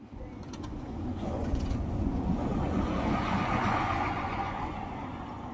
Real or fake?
fake